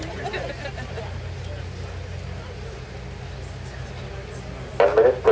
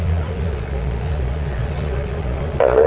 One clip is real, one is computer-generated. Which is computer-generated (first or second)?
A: second